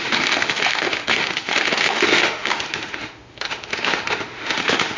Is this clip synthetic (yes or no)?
yes